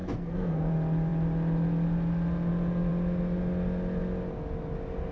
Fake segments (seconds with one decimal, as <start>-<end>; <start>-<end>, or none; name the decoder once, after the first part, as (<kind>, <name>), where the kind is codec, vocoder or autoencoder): 0.0-0.7 (codec, SNAC)